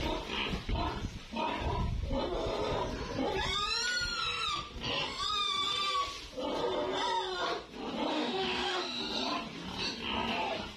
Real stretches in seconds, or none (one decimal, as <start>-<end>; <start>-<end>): 0.0-8.1; 9.0-10.8